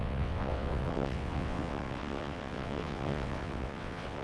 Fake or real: fake